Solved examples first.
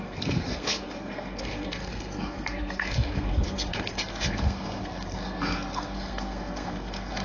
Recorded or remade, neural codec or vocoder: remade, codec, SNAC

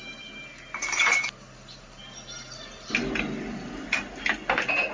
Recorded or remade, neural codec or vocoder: recorded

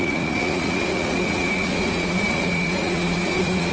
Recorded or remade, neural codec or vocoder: remade, vocoder, Vocos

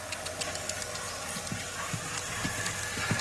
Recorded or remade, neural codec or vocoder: recorded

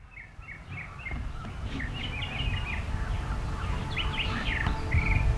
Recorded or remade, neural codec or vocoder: recorded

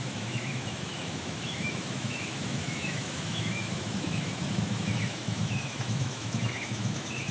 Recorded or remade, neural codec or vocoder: remade, autoencoder, DAC-VAE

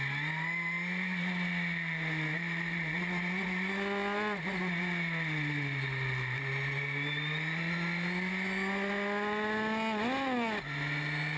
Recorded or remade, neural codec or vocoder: recorded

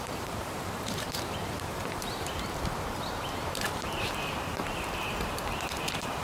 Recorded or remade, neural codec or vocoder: remade, vocoder, BigVGAN v2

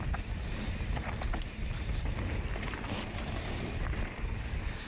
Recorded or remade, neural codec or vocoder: recorded